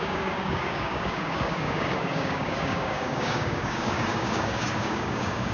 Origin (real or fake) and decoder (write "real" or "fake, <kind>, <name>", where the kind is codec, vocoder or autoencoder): fake, codec, DAC